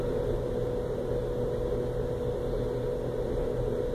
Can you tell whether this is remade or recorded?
recorded